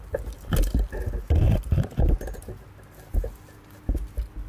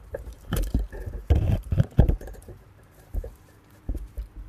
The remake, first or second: second